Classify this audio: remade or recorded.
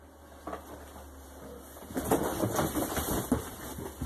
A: recorded